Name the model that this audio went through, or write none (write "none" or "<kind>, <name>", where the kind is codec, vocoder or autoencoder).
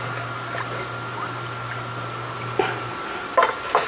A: none